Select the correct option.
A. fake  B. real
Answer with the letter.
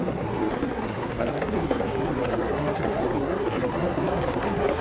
A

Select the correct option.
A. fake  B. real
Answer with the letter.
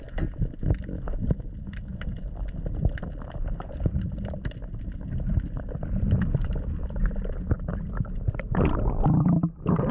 B